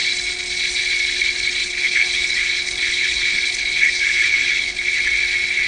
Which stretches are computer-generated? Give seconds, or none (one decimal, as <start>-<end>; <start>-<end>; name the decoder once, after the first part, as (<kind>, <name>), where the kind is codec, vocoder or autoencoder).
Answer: 1.6-5.0 (codec, HILCodec)